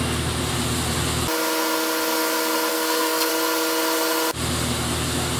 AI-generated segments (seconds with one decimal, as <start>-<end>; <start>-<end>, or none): 2.7-3.3